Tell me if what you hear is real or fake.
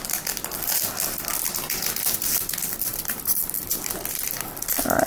real